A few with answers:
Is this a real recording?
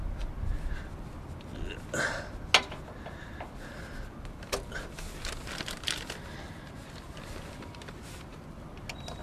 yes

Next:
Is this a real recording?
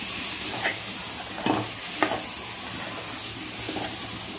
yes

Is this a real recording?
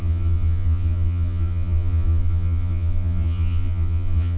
no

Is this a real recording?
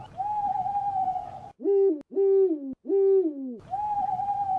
yes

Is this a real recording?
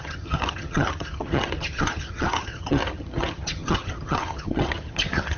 no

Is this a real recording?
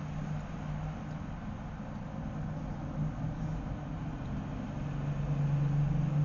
yes